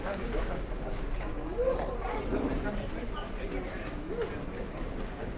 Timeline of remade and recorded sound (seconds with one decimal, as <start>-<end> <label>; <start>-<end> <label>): 0.0-1.5 remade; 1.5-4.7 recorded; 4.7-5.4 remade

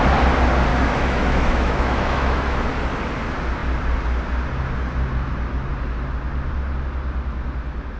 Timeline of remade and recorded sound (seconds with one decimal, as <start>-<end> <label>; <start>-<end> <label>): 0.0-0.7 recorded; 0.7-2.7 remade; 2.7-8.0 recorded

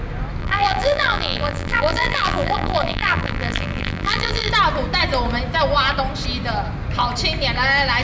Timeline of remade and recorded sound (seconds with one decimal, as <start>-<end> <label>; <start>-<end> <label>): 0.0-0.4 recorded; 0.4-4.5 remade; 4.5-8.0 recorded

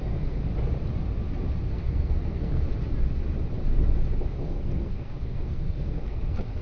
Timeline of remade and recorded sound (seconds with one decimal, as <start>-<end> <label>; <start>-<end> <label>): 0.0-0.4 remade; 0.4-1.7 recorded; 1.7-2.7 remade; 2.7-4.3 recorded; 4.3-6.6 remade

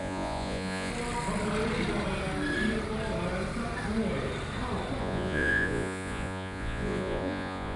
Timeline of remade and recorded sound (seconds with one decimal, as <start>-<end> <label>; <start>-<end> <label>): 0.0-0.9 remade; 0.9-5.0 recorded; 5.0-7.8 remade